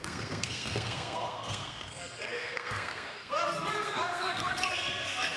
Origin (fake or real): fake